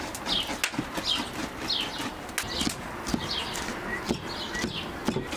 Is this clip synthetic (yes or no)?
no